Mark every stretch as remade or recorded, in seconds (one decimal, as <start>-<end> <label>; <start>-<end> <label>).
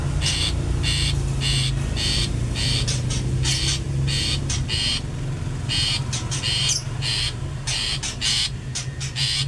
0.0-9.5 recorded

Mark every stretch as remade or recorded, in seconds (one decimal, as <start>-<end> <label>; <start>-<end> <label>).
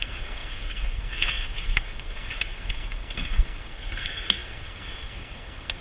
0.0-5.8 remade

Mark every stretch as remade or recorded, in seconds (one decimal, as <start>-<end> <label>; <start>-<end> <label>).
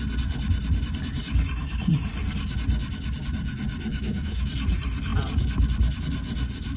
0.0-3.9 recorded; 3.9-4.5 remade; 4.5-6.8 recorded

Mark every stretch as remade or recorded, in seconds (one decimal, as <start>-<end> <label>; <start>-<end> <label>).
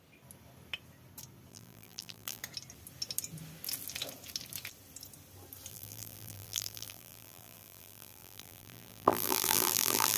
0.0-1.5 recorded; 1.5-2.4 remade; 2.4-5.7 recorded; 5.7-10.2 remade